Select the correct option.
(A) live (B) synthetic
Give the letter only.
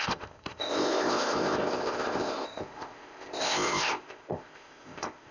B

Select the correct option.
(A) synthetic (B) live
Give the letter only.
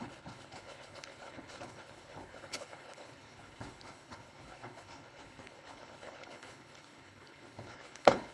A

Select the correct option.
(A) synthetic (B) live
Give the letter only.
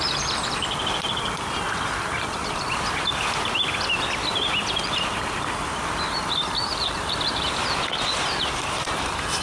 A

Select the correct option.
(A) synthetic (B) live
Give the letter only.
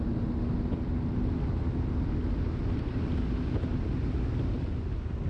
B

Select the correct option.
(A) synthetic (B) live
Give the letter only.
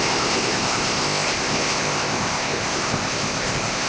A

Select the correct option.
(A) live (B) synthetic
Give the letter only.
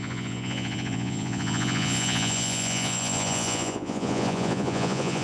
B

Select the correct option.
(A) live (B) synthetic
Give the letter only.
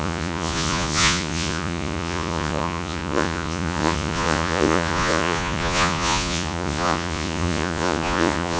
B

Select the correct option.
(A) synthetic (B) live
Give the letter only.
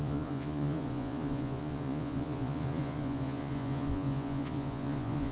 A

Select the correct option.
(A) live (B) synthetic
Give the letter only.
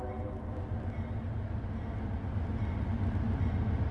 A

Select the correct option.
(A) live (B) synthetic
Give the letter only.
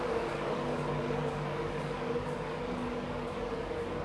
B